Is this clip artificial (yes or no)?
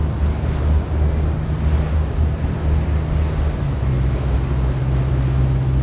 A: no